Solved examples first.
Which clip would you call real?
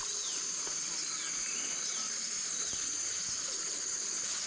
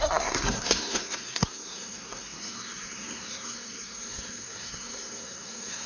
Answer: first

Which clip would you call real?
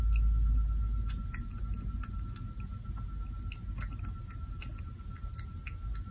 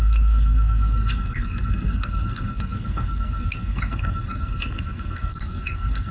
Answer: first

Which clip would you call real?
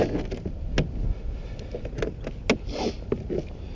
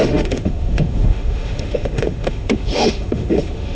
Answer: first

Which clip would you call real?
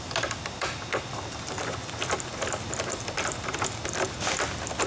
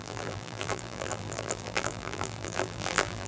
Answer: first